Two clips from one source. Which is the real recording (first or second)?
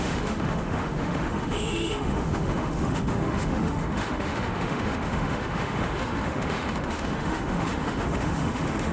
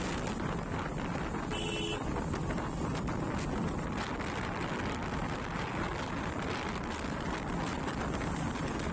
second